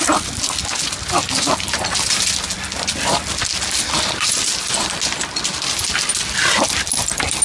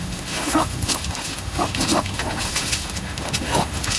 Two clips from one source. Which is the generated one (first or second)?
second